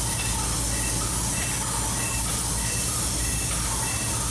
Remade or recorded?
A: recorded